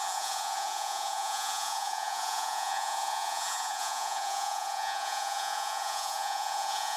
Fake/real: fake